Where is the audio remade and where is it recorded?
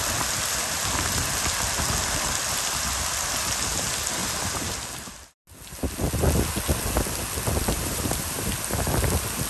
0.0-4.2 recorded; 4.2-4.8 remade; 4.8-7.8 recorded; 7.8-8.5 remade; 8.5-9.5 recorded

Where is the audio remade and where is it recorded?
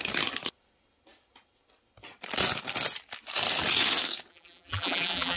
0.0-4.3 recorded; 4.3-5.4 remade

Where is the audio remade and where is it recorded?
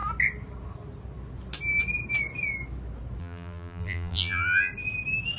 0.0-3.2 recorded; 3.2-4.7 remade; 4.7-5.4 recorded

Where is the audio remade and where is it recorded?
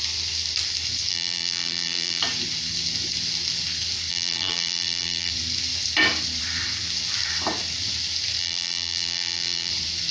0.0-1.1 recorded; 1.1-2.2 remade; 2.2-4.1 recorded; 4.1-5.3 remade; 5.3-8.4 recorded; 8.4-9.7 remade; 9.7-10.1 recorded